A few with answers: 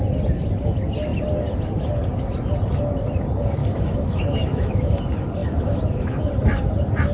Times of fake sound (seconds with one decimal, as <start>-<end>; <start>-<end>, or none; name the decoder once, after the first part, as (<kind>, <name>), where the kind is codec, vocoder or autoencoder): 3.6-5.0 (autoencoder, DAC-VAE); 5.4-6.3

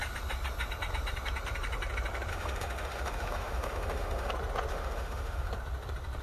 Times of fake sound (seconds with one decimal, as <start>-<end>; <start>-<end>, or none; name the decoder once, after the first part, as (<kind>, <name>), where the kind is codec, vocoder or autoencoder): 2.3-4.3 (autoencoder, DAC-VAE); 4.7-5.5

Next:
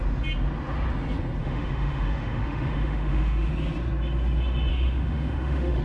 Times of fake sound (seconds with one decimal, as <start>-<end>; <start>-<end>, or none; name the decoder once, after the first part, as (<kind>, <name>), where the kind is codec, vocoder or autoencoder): 1.4-3.5 (autoencoder, DAC-VAE); 4.7-5.8